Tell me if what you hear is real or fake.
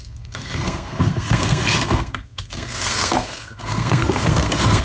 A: fake